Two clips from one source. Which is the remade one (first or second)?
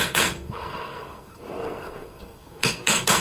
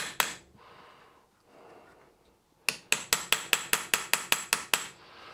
first